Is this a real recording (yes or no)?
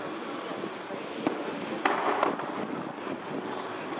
yes